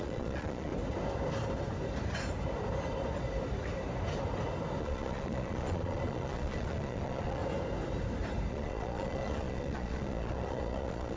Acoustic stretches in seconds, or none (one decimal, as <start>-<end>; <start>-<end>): 0.7-4.8; 7.4-8.5